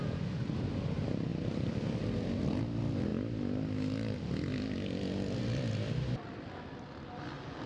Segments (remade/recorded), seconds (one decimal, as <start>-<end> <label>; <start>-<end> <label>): 0.0-7.7 recorded